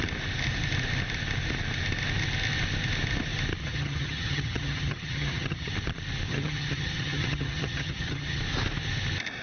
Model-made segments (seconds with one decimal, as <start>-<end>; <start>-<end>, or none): 3.6-5.7; 6.3-8.4